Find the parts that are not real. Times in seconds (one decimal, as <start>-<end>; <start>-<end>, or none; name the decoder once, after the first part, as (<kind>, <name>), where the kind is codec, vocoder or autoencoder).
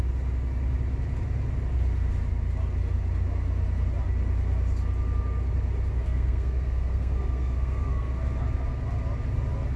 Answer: 6.0-8.1 (codec, SNAC)